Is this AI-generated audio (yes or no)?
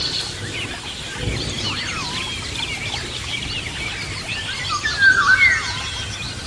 no